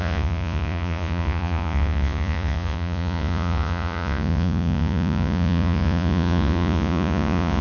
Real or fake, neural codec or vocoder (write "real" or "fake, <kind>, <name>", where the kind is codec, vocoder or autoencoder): fake, vocoder, Vocos